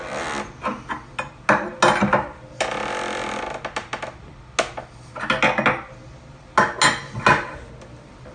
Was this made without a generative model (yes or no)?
yes